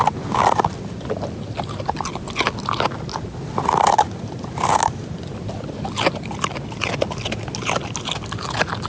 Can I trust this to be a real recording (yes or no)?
yes